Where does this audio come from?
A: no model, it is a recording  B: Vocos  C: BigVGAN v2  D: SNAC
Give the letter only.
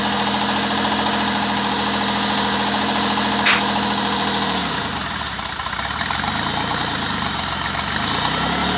A